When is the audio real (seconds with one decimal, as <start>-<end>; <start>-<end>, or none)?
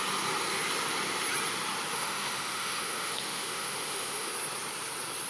0.0-1.9; 4.3-5.3